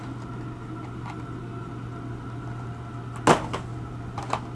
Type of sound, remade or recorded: recorded